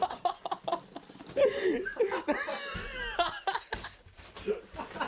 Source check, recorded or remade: recorded